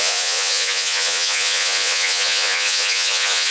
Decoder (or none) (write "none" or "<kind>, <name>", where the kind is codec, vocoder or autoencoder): vocoder, Vocos